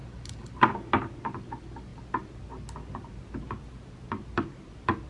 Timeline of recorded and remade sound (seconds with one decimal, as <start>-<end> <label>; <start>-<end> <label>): 0.0-0.9 remade; 0.9-5.1 recorded